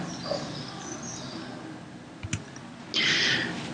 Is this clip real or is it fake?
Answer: real